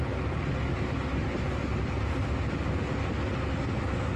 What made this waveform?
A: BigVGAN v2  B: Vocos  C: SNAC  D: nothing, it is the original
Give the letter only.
D